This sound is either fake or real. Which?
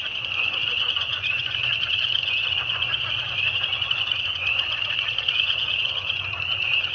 fake